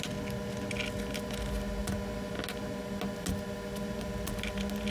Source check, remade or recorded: recorded